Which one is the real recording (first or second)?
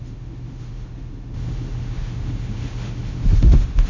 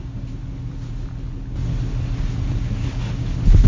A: second